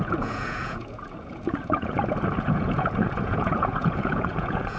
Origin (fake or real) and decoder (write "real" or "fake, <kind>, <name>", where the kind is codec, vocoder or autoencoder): fake, vocoder, Vocos